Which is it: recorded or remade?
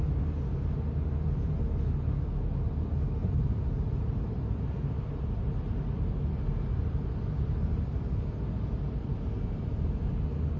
recorded